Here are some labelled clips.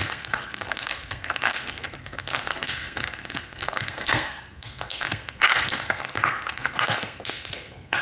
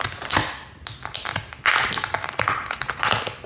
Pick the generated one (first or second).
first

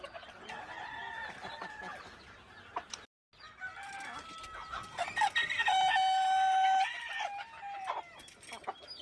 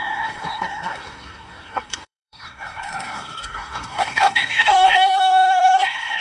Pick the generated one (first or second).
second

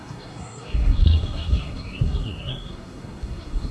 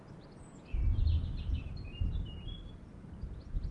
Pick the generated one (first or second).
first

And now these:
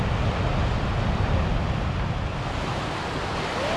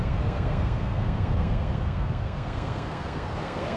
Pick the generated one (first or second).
second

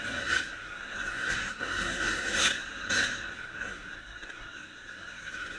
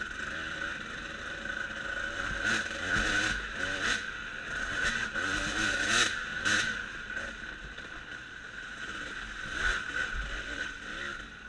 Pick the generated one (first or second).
first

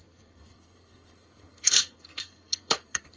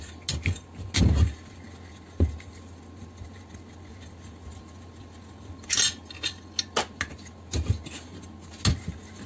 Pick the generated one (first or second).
first